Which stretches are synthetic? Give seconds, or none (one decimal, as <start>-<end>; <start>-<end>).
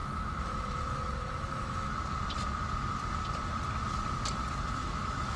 0.0-1.9; 4.8-5.4